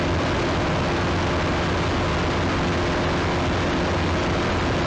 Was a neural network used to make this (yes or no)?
no